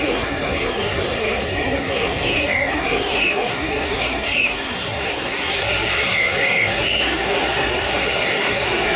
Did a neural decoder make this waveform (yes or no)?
yes